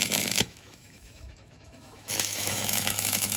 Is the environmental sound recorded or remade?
remade